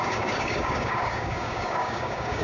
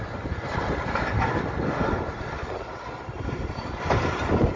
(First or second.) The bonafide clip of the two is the second